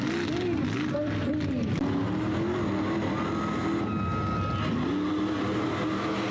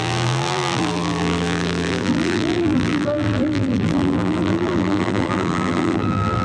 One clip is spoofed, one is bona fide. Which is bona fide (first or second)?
first